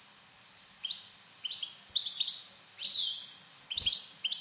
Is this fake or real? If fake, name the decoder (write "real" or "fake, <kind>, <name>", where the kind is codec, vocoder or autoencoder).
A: real